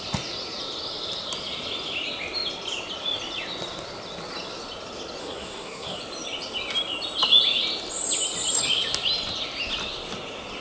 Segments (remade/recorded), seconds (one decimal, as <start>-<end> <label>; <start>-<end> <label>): 0.0-5.2 recorded; 5.2-6.0 remade; 6.0-10.6 recorded